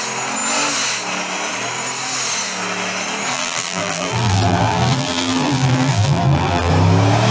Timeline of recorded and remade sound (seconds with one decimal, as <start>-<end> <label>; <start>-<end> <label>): 0.0-3.3 recorded; 3.3-6.7 remade; 6.7-7.3 recorded